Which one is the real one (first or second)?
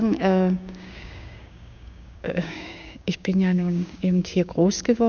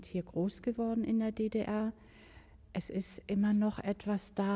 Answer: second